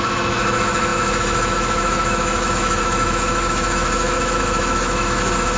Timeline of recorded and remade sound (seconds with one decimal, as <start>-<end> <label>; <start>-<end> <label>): 0.0-5.6 remade